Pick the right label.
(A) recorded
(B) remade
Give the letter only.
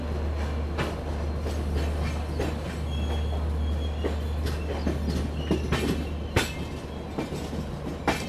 A